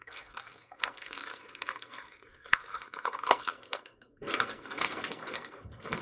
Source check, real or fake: fake